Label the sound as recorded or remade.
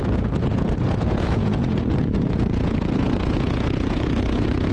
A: remade